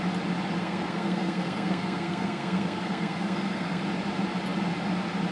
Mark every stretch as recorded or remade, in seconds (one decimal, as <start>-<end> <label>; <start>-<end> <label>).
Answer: 0.0-0.6 recorded; 0.6-3.8 remade; 3.8-5.3 recorded